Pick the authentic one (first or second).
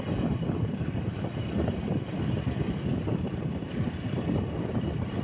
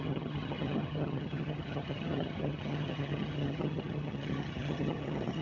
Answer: first